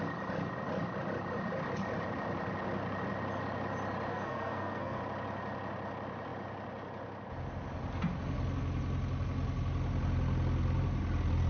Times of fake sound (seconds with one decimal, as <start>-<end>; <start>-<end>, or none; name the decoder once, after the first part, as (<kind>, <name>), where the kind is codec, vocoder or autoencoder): 4.1-5.0 (codec, SNAC)

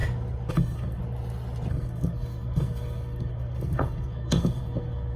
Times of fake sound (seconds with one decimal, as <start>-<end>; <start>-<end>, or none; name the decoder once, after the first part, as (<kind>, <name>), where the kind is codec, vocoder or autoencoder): 0.5-1.0 (codec, SNAC); 1.7-5.2

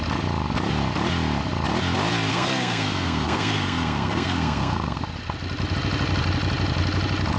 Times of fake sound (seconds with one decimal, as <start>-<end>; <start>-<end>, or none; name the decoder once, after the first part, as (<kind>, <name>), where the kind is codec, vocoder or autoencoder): 2.3-5.0 (codec, SNAC)

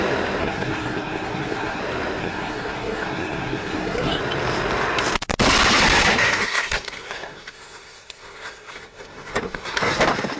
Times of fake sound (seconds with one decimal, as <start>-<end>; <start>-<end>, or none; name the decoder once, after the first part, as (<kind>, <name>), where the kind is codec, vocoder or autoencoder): 0.4-1.8 (codec, SNAC); 2.2-4.2; 6.1-9.9

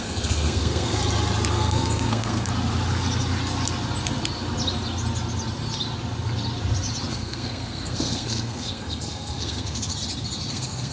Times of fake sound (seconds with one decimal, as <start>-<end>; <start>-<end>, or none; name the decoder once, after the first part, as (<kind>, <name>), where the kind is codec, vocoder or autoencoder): 0.0-1.0 (codec, SNAC); 1.5-2.5; 7.1-9.9; 10.5-10.9

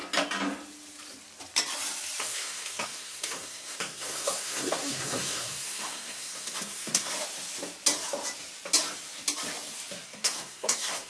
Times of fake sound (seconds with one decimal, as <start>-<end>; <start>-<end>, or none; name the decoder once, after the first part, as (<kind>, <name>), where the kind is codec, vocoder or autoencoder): 2.2-7.1 (codec, SNAC); 10.0-11.1